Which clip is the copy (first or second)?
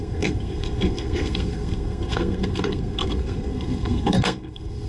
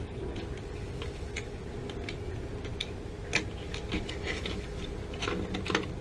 first